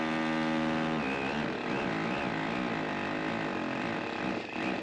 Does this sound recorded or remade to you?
recorded